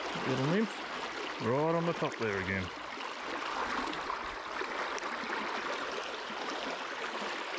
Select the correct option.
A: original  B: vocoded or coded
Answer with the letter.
A